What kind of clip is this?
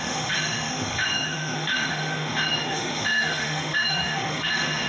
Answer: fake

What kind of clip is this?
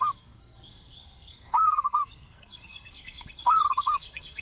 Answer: fake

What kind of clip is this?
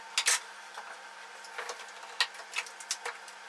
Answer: real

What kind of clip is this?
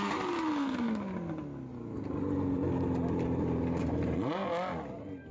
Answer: real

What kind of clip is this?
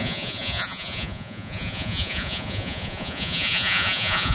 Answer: fake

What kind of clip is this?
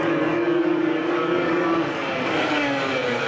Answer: fake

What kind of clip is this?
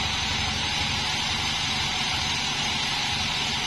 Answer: fake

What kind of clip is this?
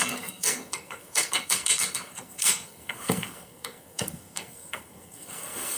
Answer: fake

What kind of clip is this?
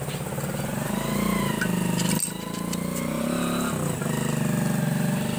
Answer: real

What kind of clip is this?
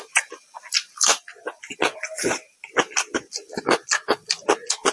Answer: real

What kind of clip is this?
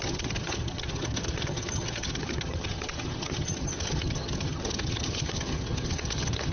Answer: fake